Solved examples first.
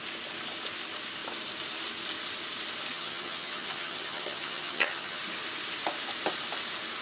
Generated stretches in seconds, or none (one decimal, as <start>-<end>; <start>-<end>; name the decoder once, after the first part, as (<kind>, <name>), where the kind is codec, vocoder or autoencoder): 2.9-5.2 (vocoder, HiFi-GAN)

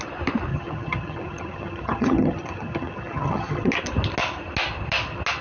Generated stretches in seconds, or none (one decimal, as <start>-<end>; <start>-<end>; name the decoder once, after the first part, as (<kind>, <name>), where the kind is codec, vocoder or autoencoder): 0.5-3.7 (vocoder, HiFi-GAN)

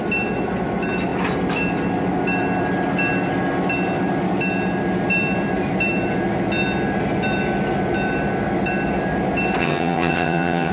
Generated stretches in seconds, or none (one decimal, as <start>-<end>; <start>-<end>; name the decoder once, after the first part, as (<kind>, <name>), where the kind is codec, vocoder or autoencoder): 9.6-10.7 (vocoder, HiFi-GAN)